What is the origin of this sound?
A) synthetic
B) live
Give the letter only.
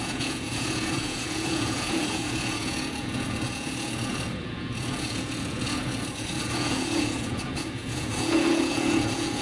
A